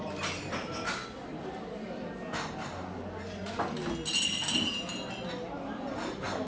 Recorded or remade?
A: recorded